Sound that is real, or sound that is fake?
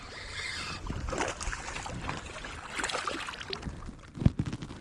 real